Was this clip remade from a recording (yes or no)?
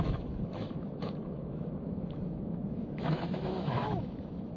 yes